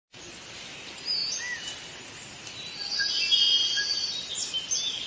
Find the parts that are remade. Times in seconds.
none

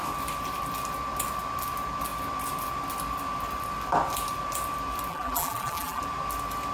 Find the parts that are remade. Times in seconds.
5.1-6.0

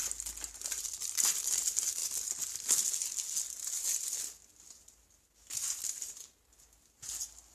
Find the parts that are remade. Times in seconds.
none

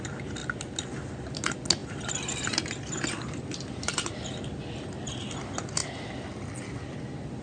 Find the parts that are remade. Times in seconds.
1.8-3.9; 5.8-6.7

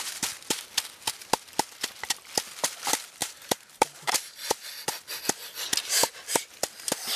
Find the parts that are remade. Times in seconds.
3.2-4.7